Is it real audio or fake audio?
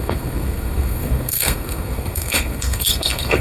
fake